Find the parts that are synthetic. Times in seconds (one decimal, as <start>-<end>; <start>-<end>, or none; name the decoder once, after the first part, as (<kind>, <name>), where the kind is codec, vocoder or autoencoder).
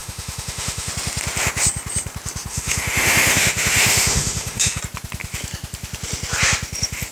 0.0-0.9 (autoencoder, DAC-VAE); 2.5-4.8